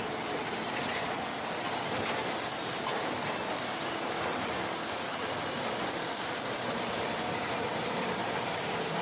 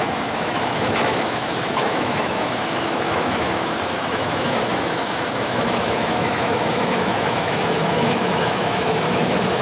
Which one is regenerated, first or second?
second